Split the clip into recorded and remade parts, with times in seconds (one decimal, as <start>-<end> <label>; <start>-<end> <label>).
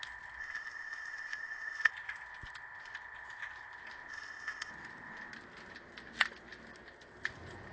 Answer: 0.0-0.4 recorded; 0.4-1.9 remade; 1.9-4.1 recorded; 4.1-4.7 remade; 4.7-7.7 recorded